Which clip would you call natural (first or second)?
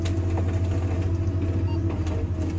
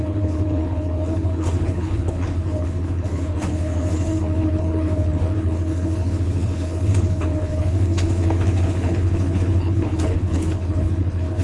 first